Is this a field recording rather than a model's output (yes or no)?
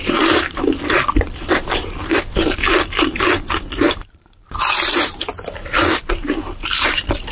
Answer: no